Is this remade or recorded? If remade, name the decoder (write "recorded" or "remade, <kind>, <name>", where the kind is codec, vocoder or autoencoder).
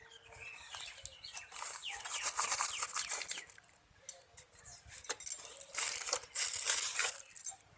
recorded